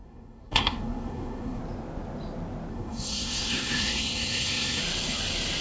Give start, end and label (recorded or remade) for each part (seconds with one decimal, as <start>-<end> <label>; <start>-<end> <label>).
0.0-1.6 remade; 1.6-2.7 recorded; 2.7-4.8 remade; 4.8-5.6 recorded